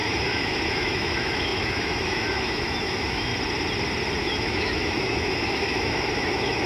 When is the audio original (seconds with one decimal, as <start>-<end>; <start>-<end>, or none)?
3.3-4.2